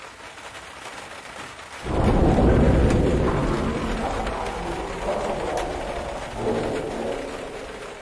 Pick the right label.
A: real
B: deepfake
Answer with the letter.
A